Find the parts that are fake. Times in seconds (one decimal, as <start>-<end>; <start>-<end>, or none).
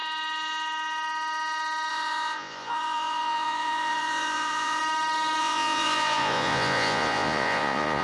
1.9-4.8; 5.4-8.0